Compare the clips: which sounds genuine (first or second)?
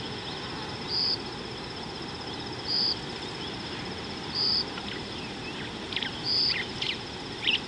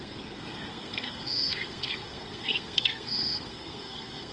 first